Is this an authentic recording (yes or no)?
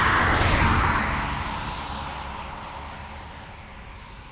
yes